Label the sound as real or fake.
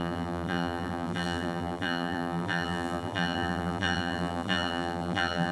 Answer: fake